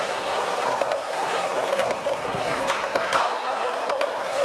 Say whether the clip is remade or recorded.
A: remade